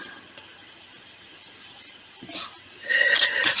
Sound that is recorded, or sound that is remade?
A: recorded